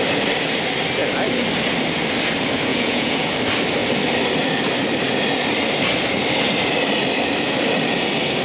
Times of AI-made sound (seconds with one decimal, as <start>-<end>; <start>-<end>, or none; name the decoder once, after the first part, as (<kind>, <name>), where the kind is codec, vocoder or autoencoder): 2.7-3.3 (vocoder, Vocos)